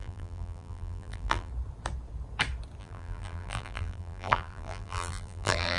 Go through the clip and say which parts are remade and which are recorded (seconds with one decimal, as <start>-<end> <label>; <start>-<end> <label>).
0.0-1.5 remade; 1.5-2.8 recorded; 2.8-5.8 remade

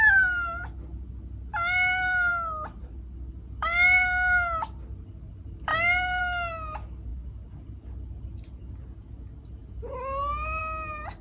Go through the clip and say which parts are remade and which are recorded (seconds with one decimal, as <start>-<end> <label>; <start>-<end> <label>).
0.0-11.2 recorded